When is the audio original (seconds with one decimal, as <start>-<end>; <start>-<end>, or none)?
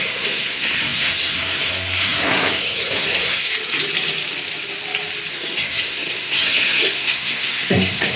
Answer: 3.5-5.3